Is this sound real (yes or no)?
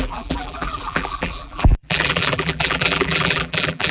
no